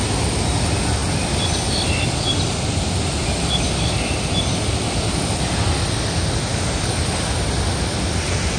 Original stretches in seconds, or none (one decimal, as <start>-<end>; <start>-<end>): 0.0-6.5; 7.0-8.6